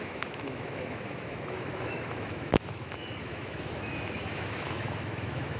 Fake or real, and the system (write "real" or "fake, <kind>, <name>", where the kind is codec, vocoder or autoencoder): fake, autoencoder, DAC-VAE